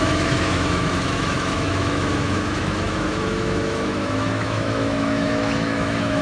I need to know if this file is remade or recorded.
remade